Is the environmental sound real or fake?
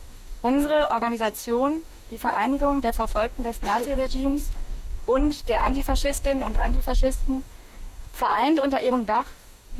fake